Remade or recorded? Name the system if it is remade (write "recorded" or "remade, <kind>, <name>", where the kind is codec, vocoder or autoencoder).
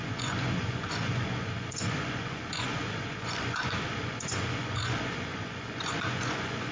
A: remade, vocoder, Vocos